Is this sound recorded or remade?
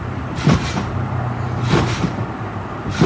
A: remade